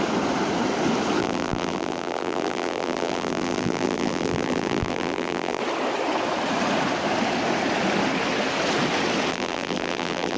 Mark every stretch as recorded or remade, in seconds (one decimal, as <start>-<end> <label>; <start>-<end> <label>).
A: 0.0-1.2 recorded; 1.2-5.6 remade; 5.6-9.3 recorded; 9.3-10.4 remade